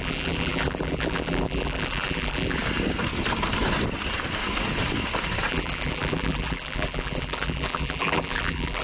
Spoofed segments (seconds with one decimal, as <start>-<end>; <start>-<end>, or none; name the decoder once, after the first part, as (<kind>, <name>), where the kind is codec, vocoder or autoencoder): 0.0-2.6 (vocoder, BigVGAN v2); 5.5-8.8